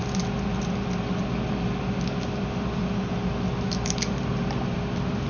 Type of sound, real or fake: real